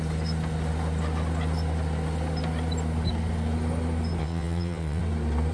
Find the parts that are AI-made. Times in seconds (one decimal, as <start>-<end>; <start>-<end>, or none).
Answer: 4.2-5.0